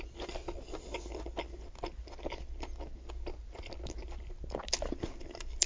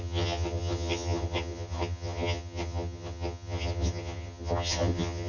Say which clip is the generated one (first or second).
second